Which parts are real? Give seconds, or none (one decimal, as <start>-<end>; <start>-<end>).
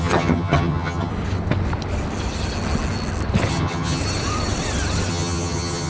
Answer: 1.1-3.5; 4.0-5.1